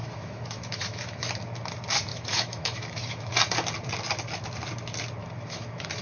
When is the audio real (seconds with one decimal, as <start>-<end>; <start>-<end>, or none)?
1.3-2.1; 3.3-5.2